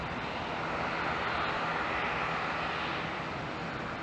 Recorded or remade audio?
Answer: recorded